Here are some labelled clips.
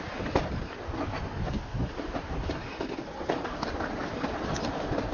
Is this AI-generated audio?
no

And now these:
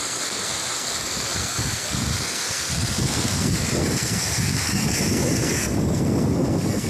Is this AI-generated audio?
yes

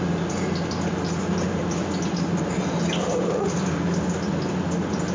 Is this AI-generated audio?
no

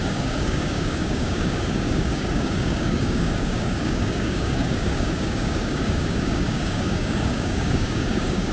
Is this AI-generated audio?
yes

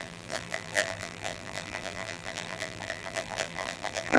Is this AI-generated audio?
yes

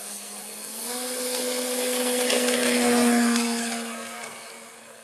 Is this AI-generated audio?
yes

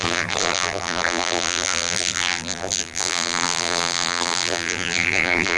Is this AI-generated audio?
yes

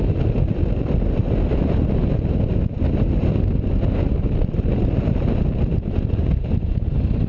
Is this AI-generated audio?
no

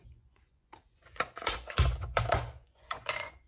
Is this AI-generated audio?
yes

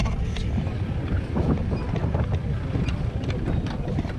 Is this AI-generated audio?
no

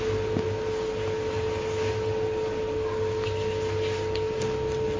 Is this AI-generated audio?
no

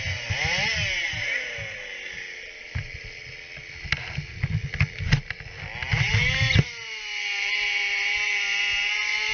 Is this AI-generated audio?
no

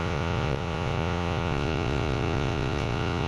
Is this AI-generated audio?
yes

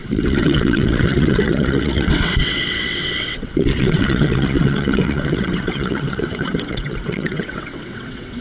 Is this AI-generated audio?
yes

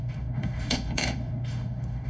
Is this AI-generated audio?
yes